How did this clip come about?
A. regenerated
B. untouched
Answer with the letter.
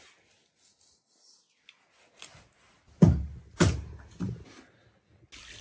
B